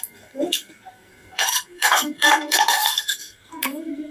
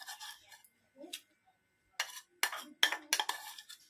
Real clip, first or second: second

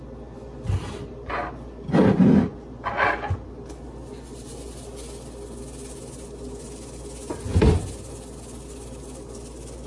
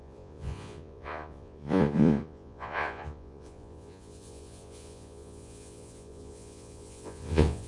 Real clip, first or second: first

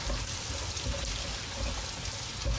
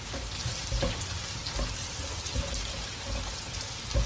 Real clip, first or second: second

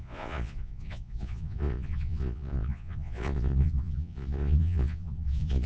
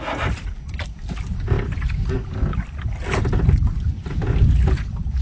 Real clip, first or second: second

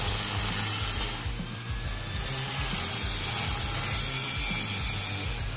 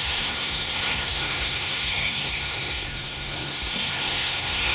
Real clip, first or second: first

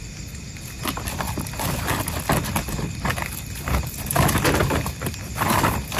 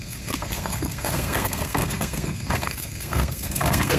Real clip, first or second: first